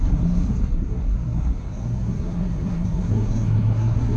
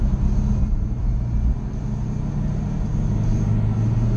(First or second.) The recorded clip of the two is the second